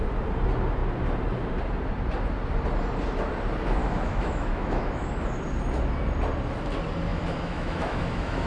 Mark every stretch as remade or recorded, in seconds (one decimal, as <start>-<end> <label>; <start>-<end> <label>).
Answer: 0.0-3.8 recorded; 3.8-5.1 remade; 5.1-7.1 recorded; 7.1-8.5 remade

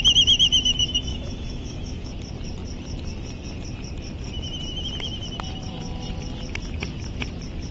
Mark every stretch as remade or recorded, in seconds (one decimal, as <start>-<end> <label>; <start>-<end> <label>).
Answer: 0.0-1.1 recorded; 1.1-2.1 remade; 2.1-7.7 recorded

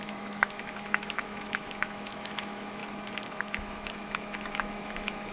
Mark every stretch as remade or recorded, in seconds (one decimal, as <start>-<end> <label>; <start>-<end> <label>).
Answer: 0.0-2.8 remade; 2.8-3.4 recorded; 3.4-5.3 remade

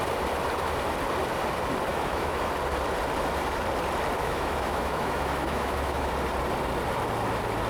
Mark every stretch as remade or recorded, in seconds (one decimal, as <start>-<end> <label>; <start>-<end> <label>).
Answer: 0.0-1.9 recorded; 1.9-2.5 remade; 2.5-4.2 recorded; 4.2-6.1 remade; 6.1-7.7 recorded

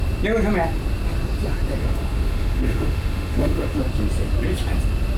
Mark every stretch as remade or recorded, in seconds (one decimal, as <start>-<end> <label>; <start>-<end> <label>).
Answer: 0.0-1.8 recorded; 1.8-3.8 remade; 3.8-5.2 recorded

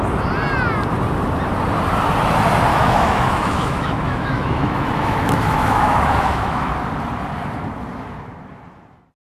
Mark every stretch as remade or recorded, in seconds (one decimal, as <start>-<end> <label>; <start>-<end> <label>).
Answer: 0.0-2.7 recorded; 2.7-6.7 remade; 6.7-9.4 recorded

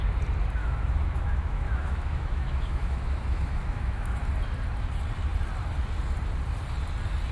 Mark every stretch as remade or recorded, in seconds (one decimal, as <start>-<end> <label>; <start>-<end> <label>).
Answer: 0.0-0.6 recorded; 0.6-4.3 remade; 4.3-7.3 recorded

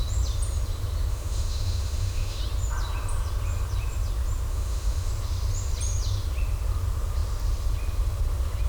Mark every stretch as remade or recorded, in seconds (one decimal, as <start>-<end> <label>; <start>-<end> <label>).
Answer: 0.0-1.1 recorded; 1.1-2.4 remade; 2.4-4.5 recorded; 4.5-5.1 remade; 5.1-8.7 recorded